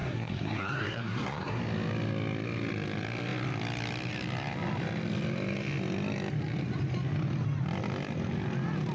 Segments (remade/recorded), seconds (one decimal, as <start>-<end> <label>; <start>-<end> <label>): 0.0-1.6 remade; 1.6-8.9 recorded